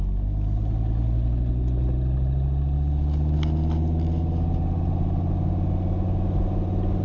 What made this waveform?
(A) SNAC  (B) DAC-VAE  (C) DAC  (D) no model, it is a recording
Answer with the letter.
D